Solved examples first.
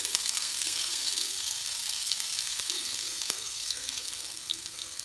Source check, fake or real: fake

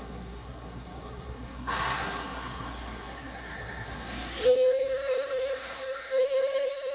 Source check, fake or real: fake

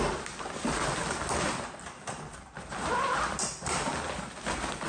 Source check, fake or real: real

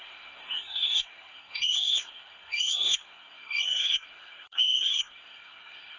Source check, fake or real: fake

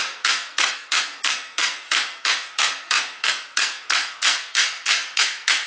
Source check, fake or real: fake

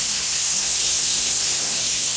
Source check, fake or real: fake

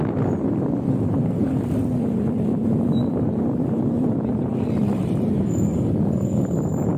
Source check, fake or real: real